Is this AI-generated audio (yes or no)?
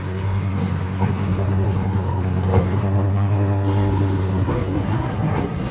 yes